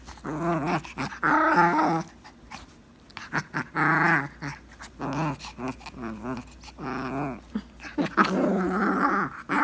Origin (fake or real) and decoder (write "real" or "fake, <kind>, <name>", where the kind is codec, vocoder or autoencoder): real